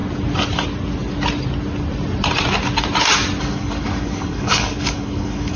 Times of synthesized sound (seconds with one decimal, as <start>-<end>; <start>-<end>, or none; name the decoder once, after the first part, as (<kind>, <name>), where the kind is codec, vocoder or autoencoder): 3.4-5.6 (codec, DAC)